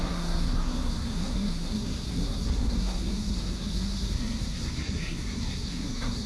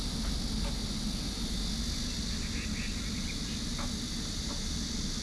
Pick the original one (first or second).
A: second